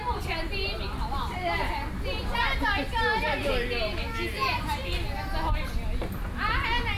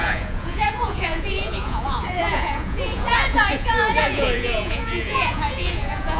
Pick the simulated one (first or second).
second